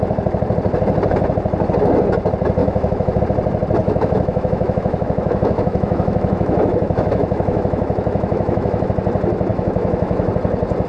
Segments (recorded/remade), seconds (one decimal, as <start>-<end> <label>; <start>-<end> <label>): 0.0-2.6 recorded; 2.6-3.2 remade; 3.2-3.8 recorded; 3.8-8.9 remade; 8.9-9.5 recorded; 9.5-10.3 remade; 10.3-10.9 recorded